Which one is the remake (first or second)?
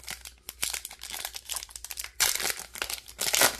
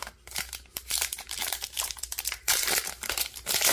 second